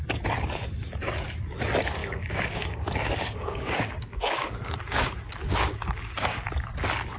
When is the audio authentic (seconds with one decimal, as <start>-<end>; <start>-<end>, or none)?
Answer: 0.0-2.0; 5.1-5.5; 6.5-7.2